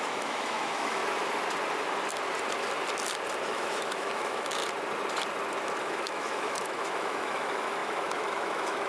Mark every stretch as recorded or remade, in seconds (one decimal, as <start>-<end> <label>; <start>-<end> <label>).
0.0-1.0 remade; 1.0-3.5 recorded; 3.5-4.6 remade; 4.6-5.8 recorded; 5.8-8.9 remade